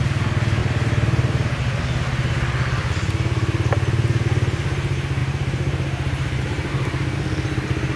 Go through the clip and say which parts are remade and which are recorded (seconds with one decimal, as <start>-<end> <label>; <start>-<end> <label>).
0.0-0.6 recorded; 0.6-1.6 remade; 1.6-5.2 recorded; 5.2-6.7 remade; 6.7-8.0 recorded